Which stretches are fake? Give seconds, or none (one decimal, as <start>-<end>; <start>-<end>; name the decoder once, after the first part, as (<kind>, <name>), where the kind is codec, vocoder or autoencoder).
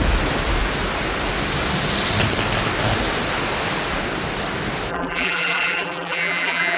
4.9-6.8 (vocoder, BigVGAN v2)